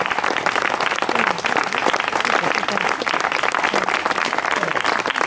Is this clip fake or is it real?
real